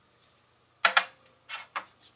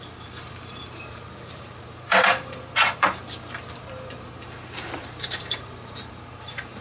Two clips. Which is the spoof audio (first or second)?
second